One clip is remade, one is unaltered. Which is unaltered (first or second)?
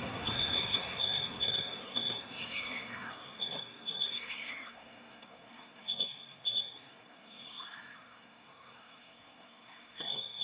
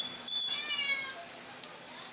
second